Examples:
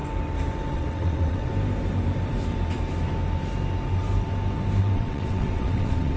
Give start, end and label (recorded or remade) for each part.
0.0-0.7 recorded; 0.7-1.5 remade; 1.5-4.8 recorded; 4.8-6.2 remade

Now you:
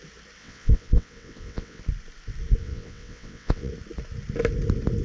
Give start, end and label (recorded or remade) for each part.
0.0-0.4 recorded; 0.4-1.8 remade; 1.8-2.6 recorded; 2.6-3.7 remade; 3.7-5.0 recorded